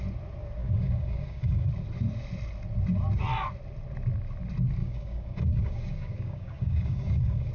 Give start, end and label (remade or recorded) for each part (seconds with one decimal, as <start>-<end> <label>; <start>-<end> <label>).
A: 0.0-0.6 recorded; 0.6-1.7 remade; 1.7-4.8 recorded; 4.8-7.5 remade